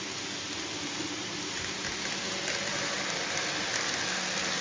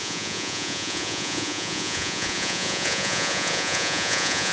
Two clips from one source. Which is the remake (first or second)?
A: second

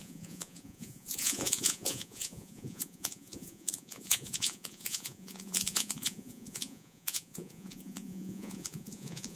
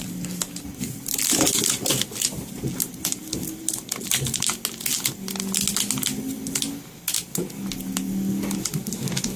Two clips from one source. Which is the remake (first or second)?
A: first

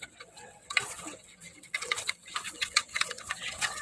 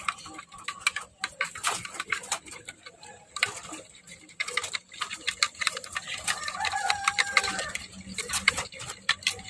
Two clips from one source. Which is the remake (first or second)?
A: first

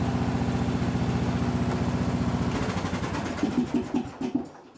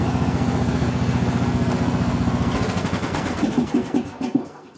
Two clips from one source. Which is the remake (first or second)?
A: second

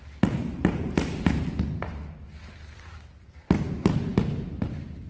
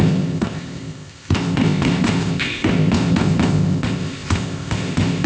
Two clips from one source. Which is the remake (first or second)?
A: second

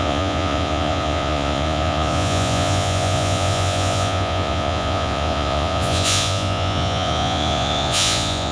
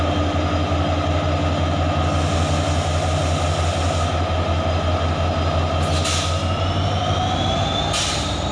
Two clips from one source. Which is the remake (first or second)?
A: first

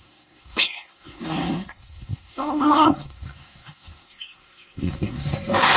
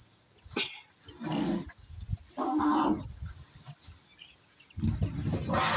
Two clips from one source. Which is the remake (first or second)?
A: first